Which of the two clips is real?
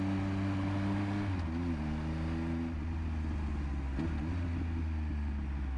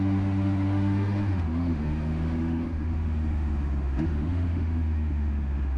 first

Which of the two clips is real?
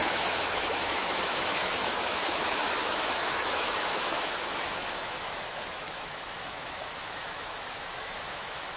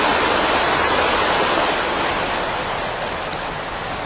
second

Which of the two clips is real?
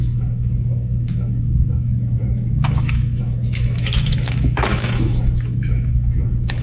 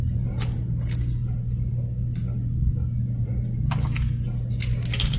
second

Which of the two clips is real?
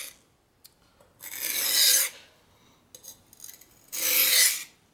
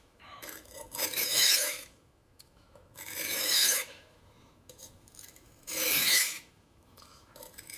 first